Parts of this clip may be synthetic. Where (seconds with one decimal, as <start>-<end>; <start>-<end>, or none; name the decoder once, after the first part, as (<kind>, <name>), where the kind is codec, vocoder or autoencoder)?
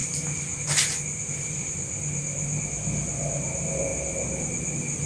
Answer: none